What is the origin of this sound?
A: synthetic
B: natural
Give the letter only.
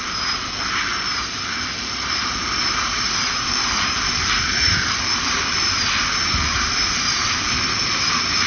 A